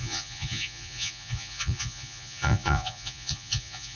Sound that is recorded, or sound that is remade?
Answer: remade